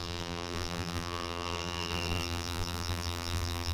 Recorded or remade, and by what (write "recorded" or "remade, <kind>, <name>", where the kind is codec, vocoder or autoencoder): remade, vocoder, BigVGAN v2